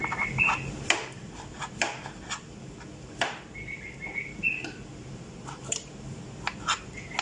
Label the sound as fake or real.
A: real